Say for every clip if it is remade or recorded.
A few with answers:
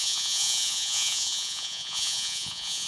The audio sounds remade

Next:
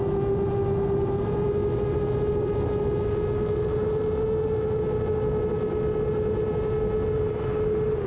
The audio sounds recorded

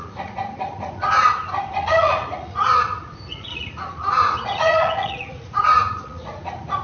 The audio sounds remade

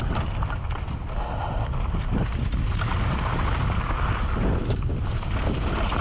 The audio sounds recorded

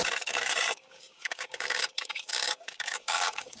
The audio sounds remade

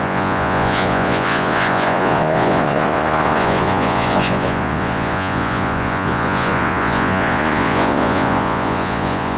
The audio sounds remade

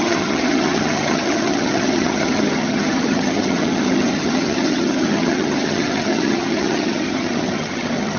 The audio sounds remade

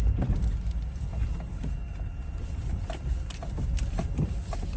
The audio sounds recorded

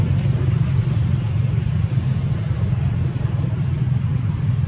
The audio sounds recorded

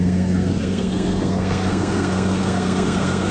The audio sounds remade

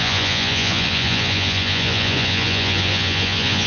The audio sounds remade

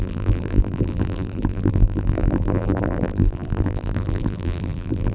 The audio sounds remade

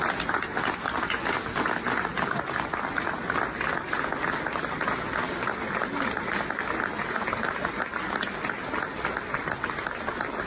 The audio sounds recorded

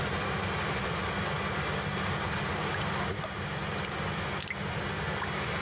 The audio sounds recorded